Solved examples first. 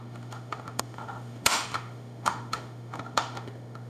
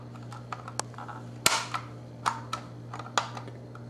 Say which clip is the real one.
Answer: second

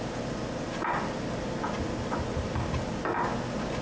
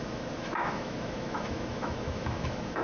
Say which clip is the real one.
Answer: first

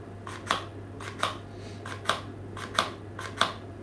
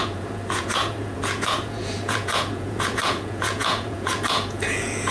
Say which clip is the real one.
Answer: first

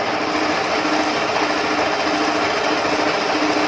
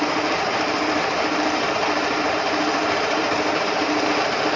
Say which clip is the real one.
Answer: first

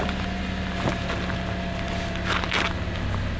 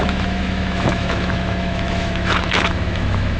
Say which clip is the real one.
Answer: first